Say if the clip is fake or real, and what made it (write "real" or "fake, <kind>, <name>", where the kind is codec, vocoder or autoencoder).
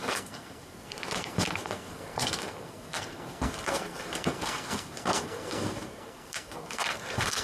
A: fake, codec, SNAC